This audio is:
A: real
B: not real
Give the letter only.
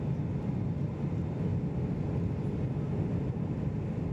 A